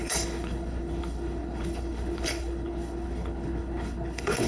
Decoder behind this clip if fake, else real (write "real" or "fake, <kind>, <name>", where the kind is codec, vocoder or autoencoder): fake, codec, HILCodec